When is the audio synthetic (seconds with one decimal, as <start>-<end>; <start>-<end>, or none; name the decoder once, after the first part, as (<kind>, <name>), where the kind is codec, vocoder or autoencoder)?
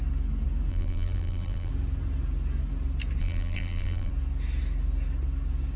0.7-1.7 (vocoder, BigVGAN v2); 3.2-4.1